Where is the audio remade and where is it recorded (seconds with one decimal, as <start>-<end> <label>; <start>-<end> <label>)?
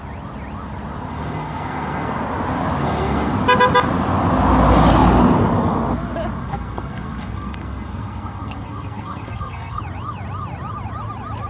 0.0-1.1 recorded; 1.1-2.2 remade; 2.2-2.8 recorded; 2.8-3.3 remade; 3.3-6.4 recorded; 6.4-9.8 remade; 9.8-11.5 recorded